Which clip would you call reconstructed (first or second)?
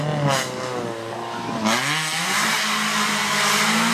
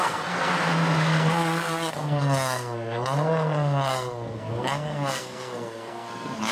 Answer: second